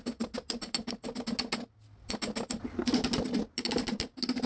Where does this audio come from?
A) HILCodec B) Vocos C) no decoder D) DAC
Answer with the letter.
C